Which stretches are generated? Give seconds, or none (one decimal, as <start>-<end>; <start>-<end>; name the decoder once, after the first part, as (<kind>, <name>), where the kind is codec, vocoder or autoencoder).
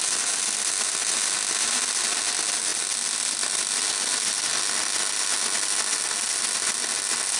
none